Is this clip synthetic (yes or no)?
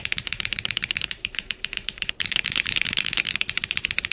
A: yes